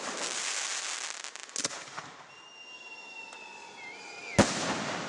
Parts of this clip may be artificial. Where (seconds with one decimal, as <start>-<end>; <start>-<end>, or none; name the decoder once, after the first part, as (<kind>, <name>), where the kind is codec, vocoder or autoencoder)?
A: none